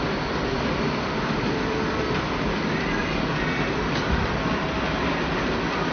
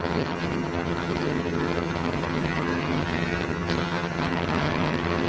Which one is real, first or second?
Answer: first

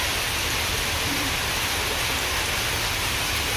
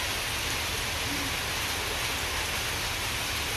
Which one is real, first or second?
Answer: second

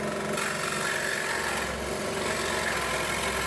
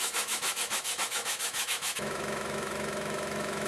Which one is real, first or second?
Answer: first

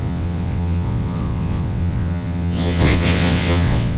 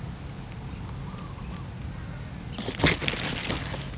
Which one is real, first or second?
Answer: second